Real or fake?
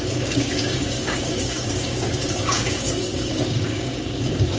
fake